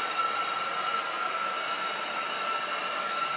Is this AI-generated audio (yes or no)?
no